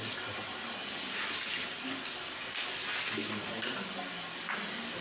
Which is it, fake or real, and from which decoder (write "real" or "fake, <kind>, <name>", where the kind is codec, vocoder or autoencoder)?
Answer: real